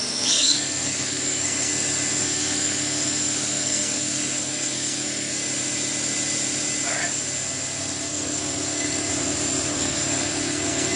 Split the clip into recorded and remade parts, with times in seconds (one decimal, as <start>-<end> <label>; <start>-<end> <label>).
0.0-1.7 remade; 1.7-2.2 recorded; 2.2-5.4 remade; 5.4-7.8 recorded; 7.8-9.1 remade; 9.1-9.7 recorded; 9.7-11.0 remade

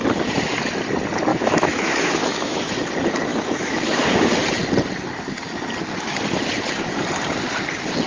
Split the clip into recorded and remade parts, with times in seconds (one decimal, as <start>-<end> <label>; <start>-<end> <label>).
0.0-1.3 recorded; 1.3-2.7 remade; 2.7-3.3 recorded; 3.3-4.3 remade; 4.3-8.1 recorded

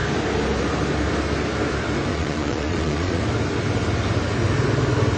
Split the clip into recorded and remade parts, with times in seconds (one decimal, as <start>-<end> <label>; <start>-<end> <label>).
0.0-2.1 recorded; 2.1-3.2 remade; 3.2-5.2 recorded

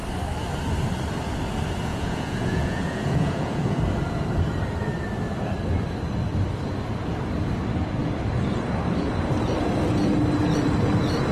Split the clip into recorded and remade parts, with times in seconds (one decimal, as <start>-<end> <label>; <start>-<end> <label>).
0.0-1.9 recorded; 1.9-3.8 remade; 3.8-11.3 recorded

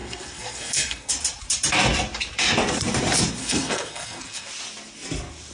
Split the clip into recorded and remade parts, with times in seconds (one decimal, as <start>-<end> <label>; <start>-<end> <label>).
0.0-1.1 remade; 1.1-3.4 recorded; 3.4-4.5 remade; 4.5-5.5 recorded